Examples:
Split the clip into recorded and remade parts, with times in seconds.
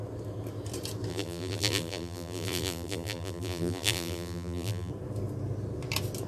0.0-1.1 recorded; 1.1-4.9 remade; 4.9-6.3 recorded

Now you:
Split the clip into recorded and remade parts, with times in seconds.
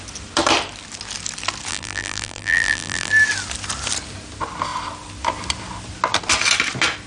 0.0-1.7 recorded; 1.7-3.1 remade; 3.1-7.1 recorded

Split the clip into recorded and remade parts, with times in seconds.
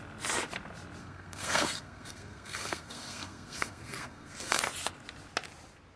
0.0-1.0 recorded; 1.0-4.6 remade; 4.6-6.0 recorded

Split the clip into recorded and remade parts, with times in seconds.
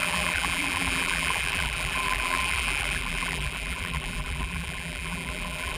0.0-5.8 remade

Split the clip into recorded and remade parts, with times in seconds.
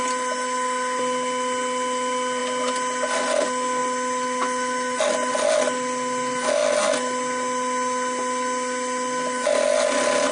0.0-10.3 recorded